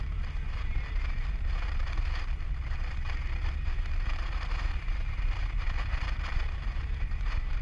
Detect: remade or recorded remade